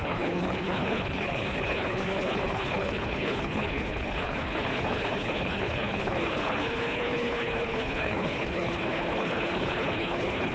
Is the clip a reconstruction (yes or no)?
yes